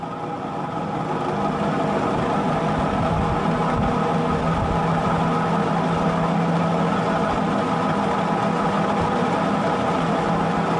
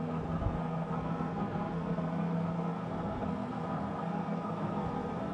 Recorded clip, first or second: first